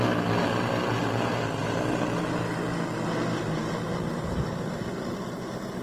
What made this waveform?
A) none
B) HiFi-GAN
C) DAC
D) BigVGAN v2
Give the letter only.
A